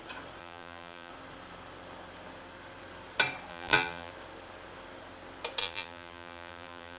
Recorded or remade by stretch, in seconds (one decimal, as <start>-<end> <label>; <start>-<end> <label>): 0.0-0.4 recorded; 0.4-1.1 remade; 1.1-3.5 recorded; 3.5-4.1 remade; 4.1-5.6 recorded; 5.6-7.0 remade